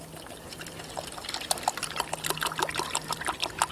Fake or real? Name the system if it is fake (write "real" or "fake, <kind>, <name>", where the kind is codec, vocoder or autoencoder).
real